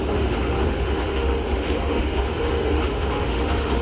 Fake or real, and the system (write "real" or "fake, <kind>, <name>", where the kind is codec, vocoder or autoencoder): fake, autoencoder, DAC-VAE